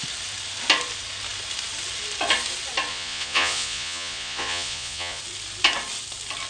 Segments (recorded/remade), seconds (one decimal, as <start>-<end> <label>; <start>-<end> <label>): 0.0-2.9 recorded; 2.9-5.2 remade; 5.2-6.5 recorded